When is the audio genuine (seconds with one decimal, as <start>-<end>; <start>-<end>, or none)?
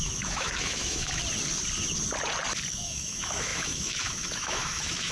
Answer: 1.2-2.7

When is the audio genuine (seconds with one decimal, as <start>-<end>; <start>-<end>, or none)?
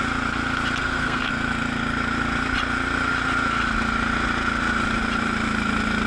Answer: 0.0-0.8; 1.3-6.1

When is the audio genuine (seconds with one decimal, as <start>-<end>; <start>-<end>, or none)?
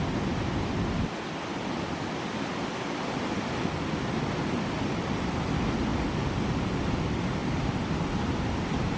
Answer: 0.0-7.4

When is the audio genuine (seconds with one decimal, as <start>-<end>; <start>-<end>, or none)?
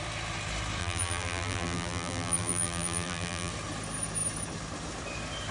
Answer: 0.0-0.8; 3.5-5.5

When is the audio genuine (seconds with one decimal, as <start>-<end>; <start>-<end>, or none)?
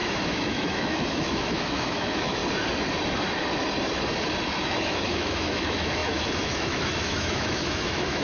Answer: 2.4-4.6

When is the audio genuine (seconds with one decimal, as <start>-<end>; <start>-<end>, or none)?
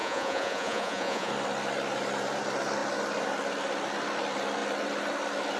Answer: 1.3-5.6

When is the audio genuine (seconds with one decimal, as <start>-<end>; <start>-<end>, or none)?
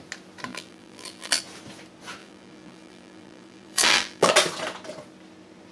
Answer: 0.0-0.5; 1.4-2.2; 4.3-5.7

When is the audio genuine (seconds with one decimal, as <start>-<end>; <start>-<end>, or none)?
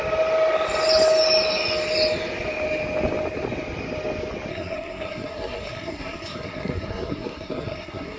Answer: 0.0-4.5